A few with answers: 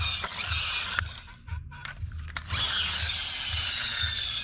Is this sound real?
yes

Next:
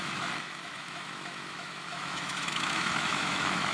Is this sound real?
no